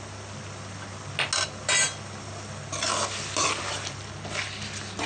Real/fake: real